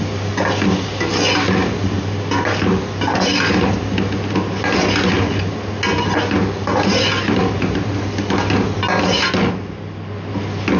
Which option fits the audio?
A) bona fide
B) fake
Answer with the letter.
A